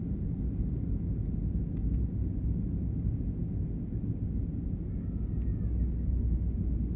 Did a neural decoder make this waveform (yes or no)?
no